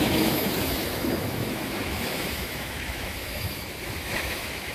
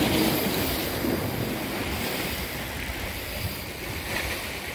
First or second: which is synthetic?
first